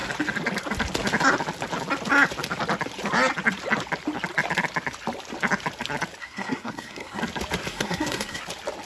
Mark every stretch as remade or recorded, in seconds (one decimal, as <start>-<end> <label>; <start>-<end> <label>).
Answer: 0.0-6.2 recorded; 6.2-7.2 remade; 7.2-7.7 recorded; 7.7-8.4 remade; 8.4-8.9 recorded